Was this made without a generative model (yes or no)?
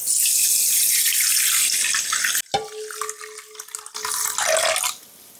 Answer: yes